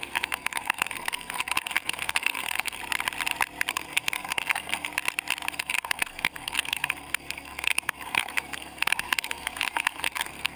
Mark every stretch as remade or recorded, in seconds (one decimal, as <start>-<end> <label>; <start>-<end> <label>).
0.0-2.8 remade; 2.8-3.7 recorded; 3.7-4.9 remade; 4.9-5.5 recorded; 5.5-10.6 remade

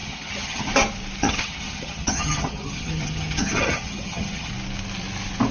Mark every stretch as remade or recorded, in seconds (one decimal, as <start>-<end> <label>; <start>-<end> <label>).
0.0-0.7 remade; 0.7-1.2 recorded; 1.2-4.5 remade; 4.5-5.5 recorded

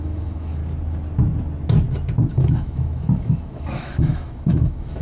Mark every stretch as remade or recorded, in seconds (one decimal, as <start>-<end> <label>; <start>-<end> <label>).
0.0-0.6 remade; 0.6-2.3 recorded; 2.3-5.0 remade

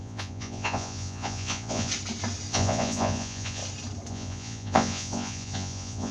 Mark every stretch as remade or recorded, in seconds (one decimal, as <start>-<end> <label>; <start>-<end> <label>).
0.0-1.9 remade; 1.9-2.5 recorded; 2.5-3.6 remade; 3.6-4.1 recorded; 4.1-6.1 remade

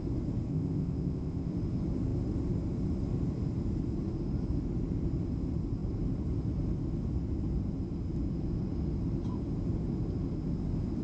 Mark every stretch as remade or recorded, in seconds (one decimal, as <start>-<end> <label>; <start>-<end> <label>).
0.0-0.5 recorded; 0.5-1.5 remade; 1.5-11.0 recorded